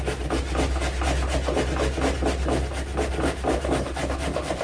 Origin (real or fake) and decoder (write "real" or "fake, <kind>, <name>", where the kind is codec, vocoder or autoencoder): real